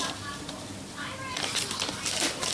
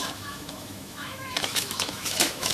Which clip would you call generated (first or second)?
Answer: second